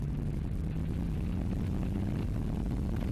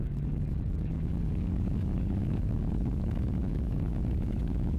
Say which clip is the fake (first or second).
second